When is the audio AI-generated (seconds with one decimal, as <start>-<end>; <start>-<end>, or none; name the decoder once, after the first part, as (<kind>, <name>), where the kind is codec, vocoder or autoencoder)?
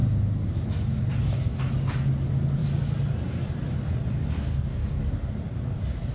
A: 4.5-5.0 (codec, DAC)